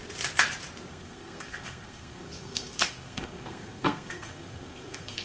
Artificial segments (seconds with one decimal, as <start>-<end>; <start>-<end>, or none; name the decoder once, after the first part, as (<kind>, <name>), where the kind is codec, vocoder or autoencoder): 0.9-5.2 (codec, SNAC)